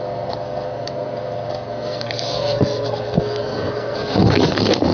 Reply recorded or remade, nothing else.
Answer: remade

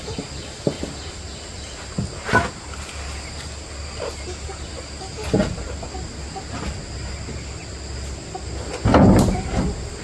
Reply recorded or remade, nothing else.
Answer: recorded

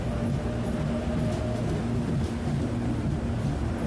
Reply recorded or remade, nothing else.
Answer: recorded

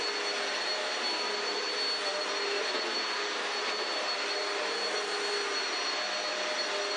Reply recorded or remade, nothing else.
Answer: recorded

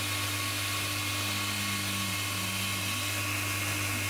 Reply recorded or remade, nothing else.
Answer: recorded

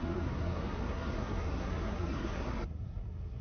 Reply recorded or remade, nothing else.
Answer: remade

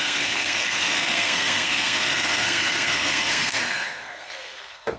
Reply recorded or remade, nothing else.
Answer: remade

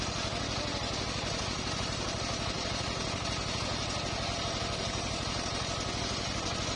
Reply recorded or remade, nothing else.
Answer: recorded